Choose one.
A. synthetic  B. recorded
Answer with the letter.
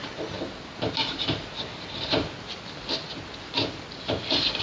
B